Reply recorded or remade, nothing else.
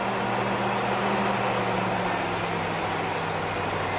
recorded